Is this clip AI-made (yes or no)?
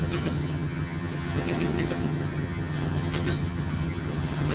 yes